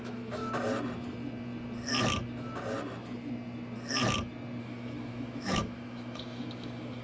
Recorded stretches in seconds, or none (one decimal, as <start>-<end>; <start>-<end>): 0.4-4.6